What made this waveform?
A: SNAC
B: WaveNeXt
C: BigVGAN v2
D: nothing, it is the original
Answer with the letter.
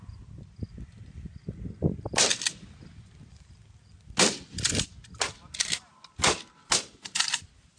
D